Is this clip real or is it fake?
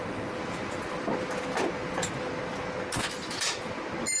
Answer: real